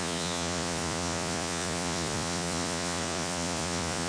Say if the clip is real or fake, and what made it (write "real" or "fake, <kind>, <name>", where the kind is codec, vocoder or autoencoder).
fake, vocoder, Vocos